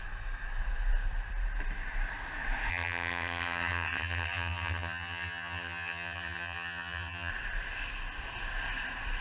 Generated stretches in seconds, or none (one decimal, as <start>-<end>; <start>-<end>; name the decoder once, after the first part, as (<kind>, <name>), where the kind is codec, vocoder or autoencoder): 2.7-7.3 (vocoder, HiFi-GAN)